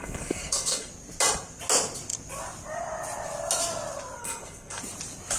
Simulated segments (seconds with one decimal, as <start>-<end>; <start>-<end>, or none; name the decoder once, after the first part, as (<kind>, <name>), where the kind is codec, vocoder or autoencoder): 0.0-0.9 (codec, SNAC); 4.2-4.8